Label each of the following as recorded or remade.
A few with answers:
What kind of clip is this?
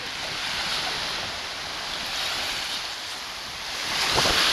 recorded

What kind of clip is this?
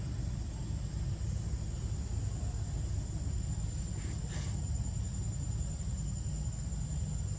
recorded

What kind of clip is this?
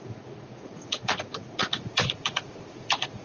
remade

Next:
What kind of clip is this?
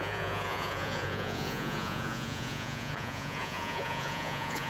remade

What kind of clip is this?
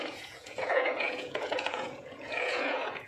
remade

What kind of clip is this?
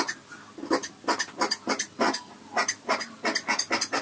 recorded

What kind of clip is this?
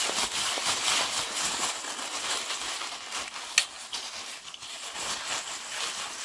recorded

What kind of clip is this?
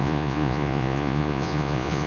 remade